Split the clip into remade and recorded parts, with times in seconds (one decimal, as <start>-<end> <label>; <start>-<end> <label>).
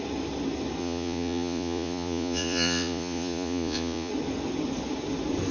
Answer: 0.0-0.8 recorded; 0.8-4.1 remade; 4.1-5.5 recorded